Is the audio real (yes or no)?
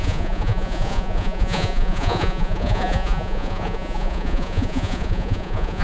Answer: no